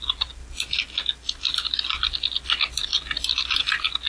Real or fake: real